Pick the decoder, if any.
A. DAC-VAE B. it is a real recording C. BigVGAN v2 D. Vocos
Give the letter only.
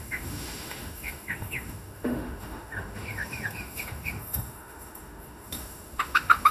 A